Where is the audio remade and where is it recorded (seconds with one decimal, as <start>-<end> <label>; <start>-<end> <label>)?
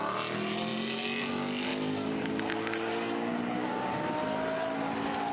0.0-1.7 recorded; 1.7-3.7 remade; 3.7-5.3 recorded